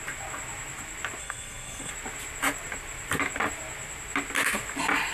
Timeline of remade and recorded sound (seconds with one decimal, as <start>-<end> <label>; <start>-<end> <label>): 0.0-1.2 recorded; 1.2-1.9 remade; 1.9-5.1 recorded